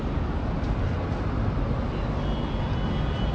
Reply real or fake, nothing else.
real